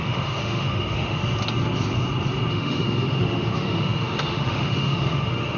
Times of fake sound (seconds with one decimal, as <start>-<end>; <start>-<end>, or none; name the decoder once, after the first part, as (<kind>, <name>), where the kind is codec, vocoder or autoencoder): 0.0-1.2 (autoencoder, DAC-VAE); 2.5-5.6